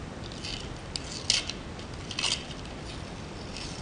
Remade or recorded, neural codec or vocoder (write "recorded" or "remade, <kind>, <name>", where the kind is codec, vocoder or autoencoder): recorded